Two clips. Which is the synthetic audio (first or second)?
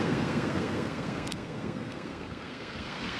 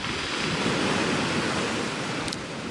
first